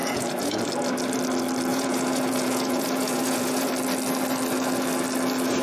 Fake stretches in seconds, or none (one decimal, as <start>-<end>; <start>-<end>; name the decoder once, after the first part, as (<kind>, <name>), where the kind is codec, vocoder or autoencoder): 0.0-0.6 (vocoder, Vocos); 1.7-3.7